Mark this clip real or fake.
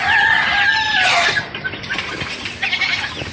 real